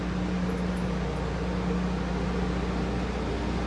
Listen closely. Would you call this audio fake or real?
real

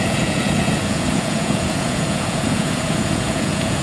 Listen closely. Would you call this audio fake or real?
fake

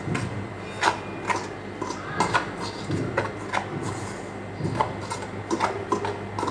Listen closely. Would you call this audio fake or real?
real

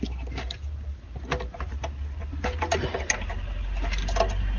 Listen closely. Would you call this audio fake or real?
real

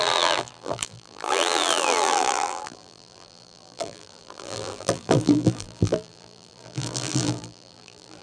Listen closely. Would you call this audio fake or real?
fake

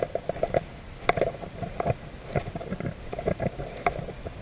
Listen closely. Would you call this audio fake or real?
real